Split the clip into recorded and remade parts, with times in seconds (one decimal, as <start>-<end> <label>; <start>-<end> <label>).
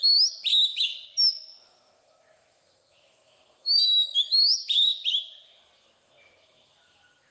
0.0-0.9 remade; 0.9-1.6 recorded; 1.6-4.9 remade; 4.9-5.4 recorded; 5.4-7.3 remade